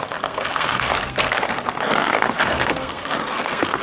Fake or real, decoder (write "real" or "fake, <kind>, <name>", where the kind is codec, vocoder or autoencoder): fake, codec, SNAC